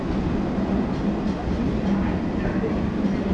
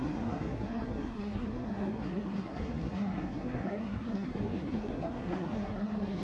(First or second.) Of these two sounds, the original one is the first